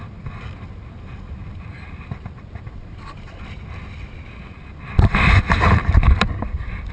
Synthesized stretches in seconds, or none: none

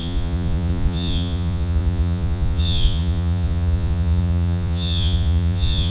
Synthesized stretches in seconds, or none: 0.0-5.9

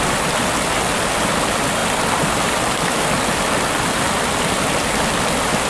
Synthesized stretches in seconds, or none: none

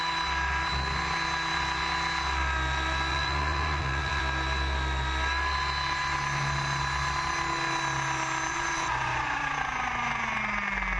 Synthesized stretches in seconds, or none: 3.1-4.2; 8.5-10.4

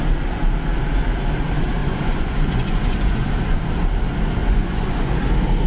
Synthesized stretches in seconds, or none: 1.8-3.3; 4.4-5.1

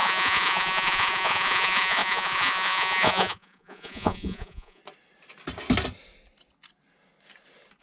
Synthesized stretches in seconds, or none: 0.0-4.8

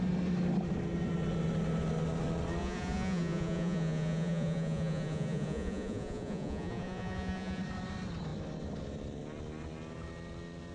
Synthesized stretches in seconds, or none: 2.6-7.6